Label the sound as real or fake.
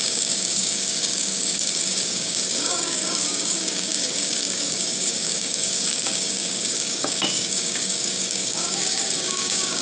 fake